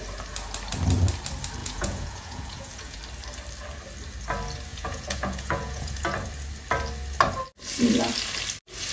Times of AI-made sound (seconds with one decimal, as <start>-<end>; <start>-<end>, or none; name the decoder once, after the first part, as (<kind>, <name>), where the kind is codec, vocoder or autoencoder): 1.6-3.0 (vocoder, Vocos); 4.7-6.0